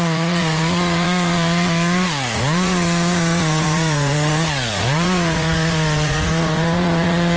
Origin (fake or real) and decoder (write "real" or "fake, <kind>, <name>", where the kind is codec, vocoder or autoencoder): fake, vocoder, Vocos